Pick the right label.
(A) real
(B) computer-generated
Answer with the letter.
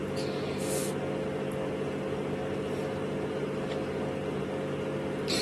A